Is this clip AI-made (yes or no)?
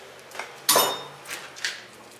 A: no